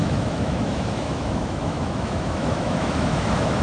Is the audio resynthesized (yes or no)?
yes